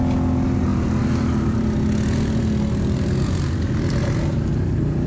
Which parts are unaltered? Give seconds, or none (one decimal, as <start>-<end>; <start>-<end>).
0.0-5.1